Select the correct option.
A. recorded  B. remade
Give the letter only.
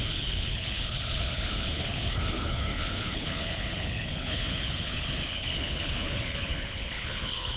B